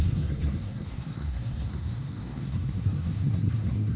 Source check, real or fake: fake